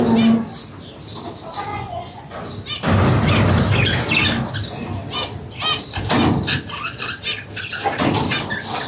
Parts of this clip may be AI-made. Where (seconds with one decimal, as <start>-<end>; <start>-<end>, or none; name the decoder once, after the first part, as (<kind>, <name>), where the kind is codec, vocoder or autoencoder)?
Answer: 1.7-2.5 (vocoder, Vocos)